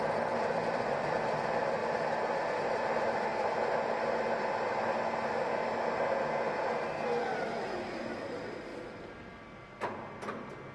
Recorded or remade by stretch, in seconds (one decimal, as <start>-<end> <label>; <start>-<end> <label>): 0.0-10.7 recorded